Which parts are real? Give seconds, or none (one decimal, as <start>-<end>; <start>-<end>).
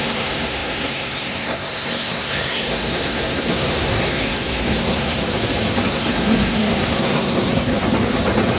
5.2-5.9; 7.7-8.6